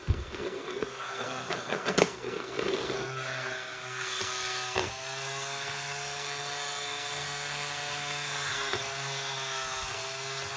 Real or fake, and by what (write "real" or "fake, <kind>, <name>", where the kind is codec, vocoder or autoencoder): fake, codec, SNAC